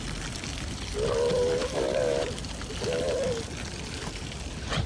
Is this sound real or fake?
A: real